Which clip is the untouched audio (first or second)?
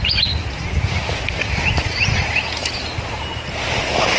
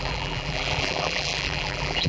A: first